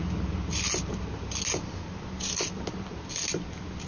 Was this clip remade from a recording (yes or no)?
no